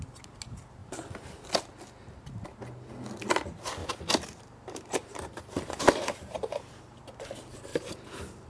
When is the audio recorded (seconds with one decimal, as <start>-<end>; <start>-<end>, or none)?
0.0-3.8; 6.6-7.7